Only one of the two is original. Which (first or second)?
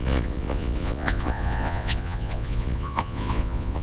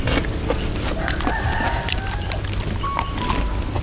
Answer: second